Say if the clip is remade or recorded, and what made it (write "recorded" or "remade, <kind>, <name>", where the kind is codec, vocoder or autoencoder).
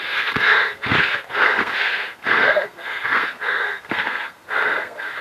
remade, codec, SNAC